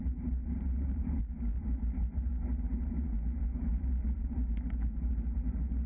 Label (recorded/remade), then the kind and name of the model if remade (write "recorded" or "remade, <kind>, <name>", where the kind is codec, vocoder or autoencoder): remade, vocoder, BigVGAN v2